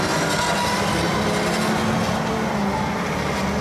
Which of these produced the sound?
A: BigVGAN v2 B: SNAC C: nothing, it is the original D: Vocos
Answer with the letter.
C